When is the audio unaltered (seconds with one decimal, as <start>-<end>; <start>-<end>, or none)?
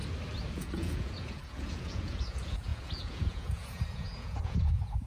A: 0.0-0.5